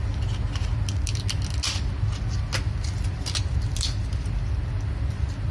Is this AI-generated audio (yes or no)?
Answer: no